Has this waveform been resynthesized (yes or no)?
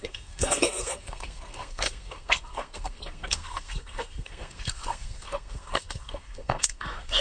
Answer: yes